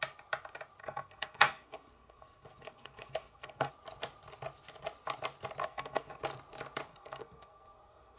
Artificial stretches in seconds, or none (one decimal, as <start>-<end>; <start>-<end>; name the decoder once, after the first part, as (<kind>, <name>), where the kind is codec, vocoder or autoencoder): 0.8-3.7 (codec, SNAC); 5.6-6.2; 6.9-8.2